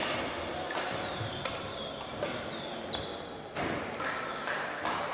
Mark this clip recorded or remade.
recorded